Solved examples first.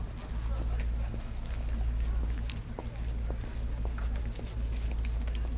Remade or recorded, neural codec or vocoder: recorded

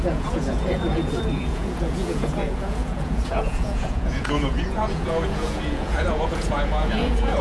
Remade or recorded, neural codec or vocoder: remade, vocoder, Vocos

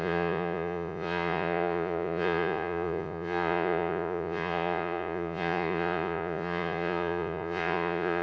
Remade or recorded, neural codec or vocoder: remade, vocoder, Vocos